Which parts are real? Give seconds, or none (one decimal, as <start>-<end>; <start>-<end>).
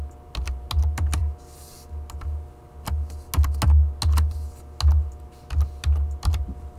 0.0-6.8